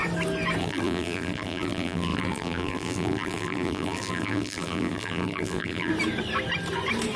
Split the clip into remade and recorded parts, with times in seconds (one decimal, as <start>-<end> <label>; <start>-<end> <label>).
0.0-0.6 recorded; 0.6-5.9 remade; 5.9-7.2 recorded